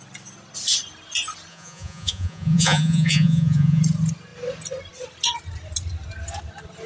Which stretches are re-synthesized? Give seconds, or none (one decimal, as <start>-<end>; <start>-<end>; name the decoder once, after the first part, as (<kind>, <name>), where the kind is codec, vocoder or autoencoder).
1.5-3.8 (vocoder, Vocos)